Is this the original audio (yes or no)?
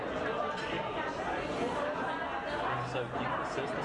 yes